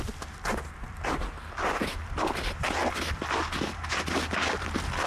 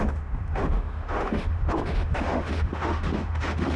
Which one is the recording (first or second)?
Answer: first